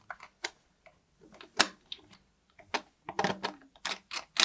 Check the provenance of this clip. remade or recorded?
recorded